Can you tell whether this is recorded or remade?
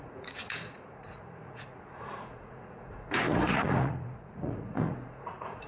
remade